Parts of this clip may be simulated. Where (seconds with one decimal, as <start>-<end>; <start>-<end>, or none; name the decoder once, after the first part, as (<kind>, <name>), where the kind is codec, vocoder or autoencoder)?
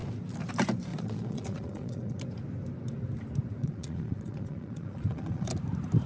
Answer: 0.9-2.2 (vocoder, Vocos); 3.6-5.5